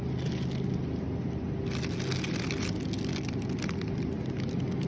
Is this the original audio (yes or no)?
yes